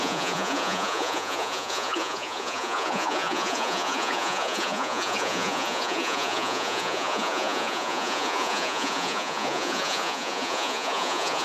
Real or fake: fake